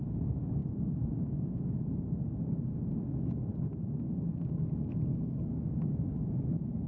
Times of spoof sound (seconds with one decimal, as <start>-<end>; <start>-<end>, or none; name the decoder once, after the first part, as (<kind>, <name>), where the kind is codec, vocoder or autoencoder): 0.0-6.9 (codec, DAC)